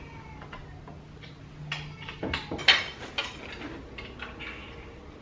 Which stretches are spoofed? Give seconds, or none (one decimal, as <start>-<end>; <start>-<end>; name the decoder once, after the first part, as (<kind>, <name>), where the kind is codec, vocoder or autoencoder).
none